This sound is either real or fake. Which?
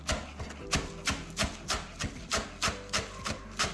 real